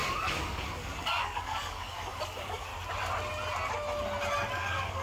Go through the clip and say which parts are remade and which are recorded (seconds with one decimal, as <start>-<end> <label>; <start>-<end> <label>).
0.0-2.7 remade; 2.7-4.5 recorded; 4.5-5.0 remade